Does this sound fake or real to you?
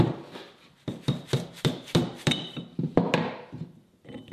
real